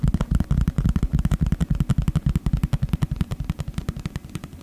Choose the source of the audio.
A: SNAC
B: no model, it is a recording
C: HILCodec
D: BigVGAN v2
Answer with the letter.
B